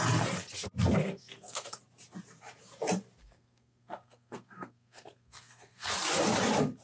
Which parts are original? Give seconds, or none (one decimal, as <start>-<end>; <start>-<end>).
0.0-1.0; 1.8-3.2; 5.9-6.8